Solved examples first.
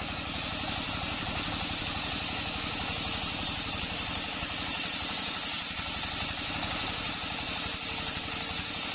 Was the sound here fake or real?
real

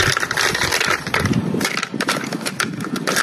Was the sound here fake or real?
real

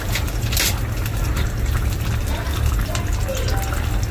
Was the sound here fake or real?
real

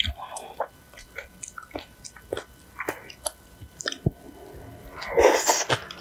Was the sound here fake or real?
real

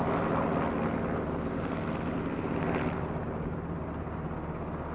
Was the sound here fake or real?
real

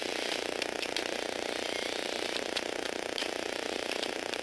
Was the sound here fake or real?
fake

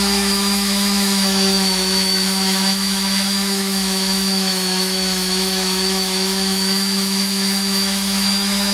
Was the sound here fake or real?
fake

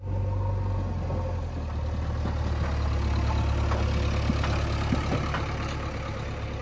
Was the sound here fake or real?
real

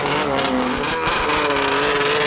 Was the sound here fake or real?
real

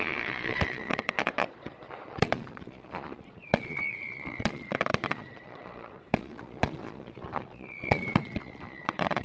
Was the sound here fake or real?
fake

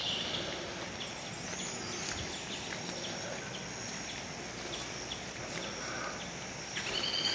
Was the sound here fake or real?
real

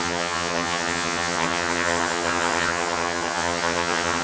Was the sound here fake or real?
fake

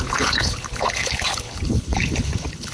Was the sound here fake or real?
fake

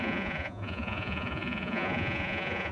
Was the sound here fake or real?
fake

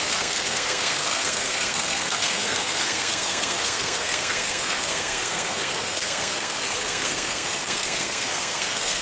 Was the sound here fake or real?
fake